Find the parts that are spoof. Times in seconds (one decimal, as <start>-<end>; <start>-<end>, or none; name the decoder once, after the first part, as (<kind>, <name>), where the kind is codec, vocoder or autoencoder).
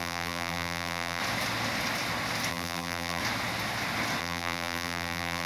0.0-1.2 (vocoder, BigVGAN v2); 2.5-3.2; 4.2-5.5